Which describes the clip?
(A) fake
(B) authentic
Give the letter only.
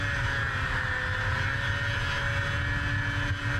B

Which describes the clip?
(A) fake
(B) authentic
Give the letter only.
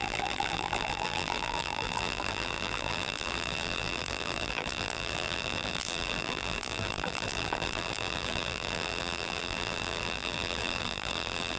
A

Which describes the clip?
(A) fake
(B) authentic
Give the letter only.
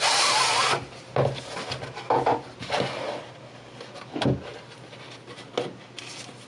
B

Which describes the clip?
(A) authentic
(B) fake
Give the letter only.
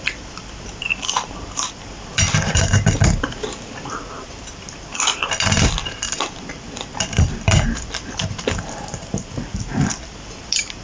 B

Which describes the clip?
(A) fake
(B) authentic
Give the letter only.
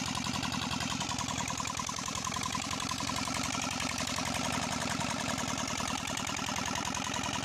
A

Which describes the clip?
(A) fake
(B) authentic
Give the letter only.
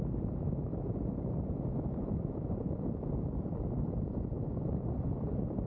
A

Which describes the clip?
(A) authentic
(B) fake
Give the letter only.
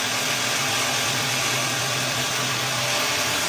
A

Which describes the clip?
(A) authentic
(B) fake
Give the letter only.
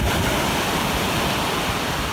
B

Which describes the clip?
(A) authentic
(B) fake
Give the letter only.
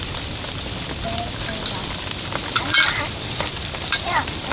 B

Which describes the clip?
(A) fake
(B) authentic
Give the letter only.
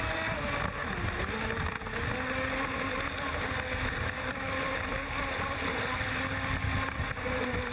B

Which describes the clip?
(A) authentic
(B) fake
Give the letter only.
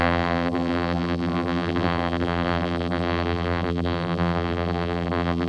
B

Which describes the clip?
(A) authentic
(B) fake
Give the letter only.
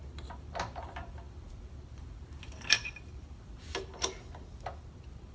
B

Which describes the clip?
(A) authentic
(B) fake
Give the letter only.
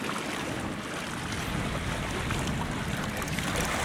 B